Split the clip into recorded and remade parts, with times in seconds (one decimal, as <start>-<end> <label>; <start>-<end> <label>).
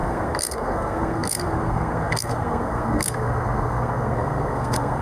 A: 0.0-5.0 remade